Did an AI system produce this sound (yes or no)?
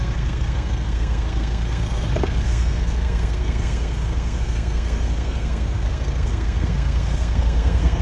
yes